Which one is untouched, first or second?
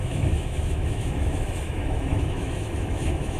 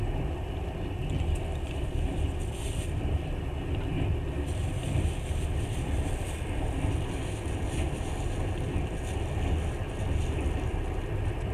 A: second